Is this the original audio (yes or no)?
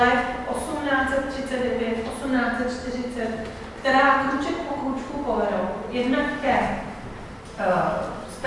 yes